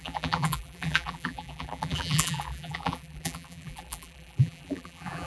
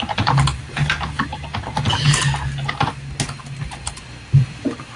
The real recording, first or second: second